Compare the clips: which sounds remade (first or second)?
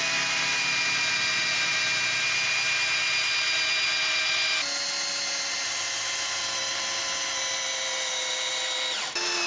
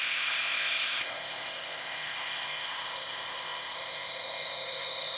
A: second